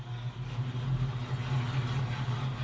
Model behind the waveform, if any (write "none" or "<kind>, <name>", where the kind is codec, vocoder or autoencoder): none